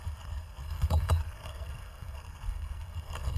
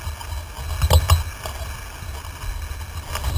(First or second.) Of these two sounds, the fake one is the first